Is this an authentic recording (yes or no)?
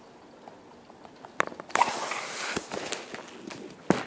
yes